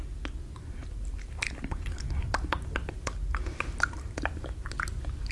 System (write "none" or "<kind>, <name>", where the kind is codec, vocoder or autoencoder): none